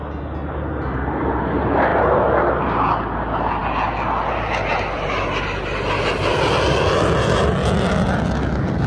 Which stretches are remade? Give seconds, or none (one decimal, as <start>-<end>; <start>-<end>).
none

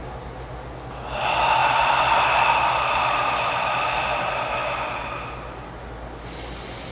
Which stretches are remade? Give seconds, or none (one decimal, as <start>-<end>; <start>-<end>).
none

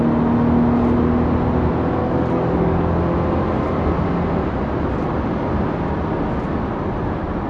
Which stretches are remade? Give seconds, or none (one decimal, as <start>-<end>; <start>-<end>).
2.0-3.0

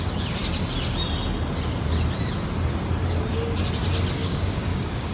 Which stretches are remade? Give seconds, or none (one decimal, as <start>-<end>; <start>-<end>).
4.2-5.1

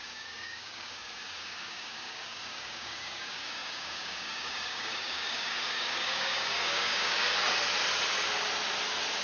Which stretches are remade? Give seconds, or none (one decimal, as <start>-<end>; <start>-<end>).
0.0-7.3